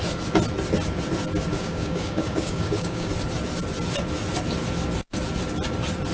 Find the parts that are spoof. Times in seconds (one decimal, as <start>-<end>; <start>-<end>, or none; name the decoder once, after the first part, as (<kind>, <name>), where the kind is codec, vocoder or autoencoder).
1.5-3.1 (codec, DAC)